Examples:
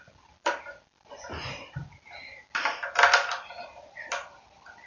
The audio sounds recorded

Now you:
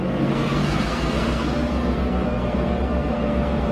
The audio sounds remade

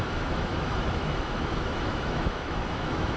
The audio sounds remade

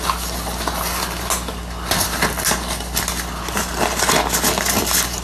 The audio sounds recorded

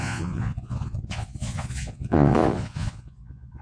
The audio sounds remade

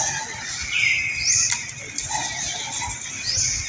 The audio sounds recorded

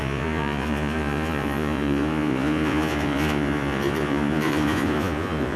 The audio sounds remade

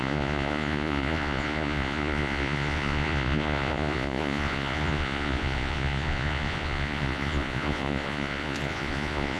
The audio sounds remade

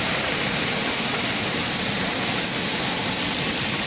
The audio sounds recorded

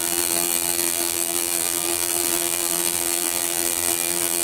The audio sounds remade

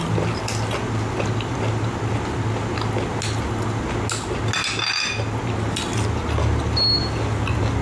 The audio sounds recorded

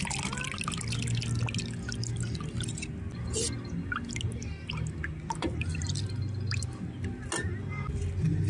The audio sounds recorded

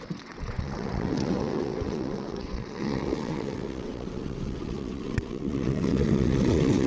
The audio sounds remade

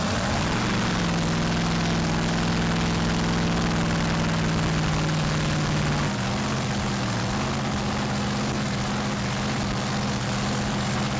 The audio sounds recorded